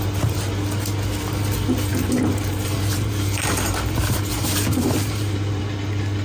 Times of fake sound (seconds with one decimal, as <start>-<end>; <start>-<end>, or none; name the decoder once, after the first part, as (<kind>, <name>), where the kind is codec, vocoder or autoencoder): 1.9-5.6 (vocoder, BigVGAN v2)